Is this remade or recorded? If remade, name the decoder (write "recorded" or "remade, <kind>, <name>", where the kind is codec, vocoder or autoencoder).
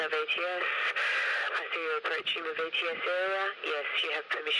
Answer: recorded